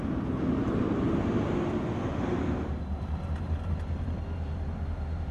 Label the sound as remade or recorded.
recorded